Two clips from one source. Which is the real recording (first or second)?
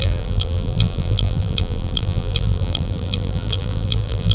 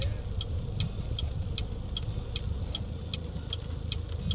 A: second